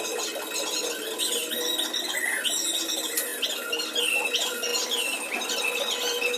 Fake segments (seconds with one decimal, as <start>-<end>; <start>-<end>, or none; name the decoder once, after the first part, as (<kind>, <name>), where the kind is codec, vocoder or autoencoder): none